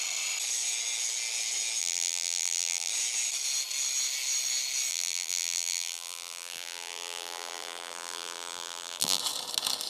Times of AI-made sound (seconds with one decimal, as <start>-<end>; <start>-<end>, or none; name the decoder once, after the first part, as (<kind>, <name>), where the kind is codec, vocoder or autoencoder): 1.8-2.9 (vocoder, BigVGAN v2); 4.9-9.2